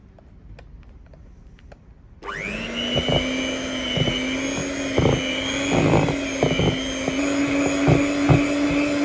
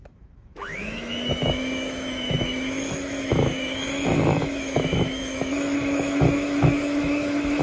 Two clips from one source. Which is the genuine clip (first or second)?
first